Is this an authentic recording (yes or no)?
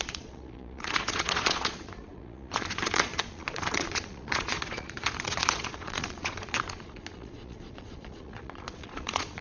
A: no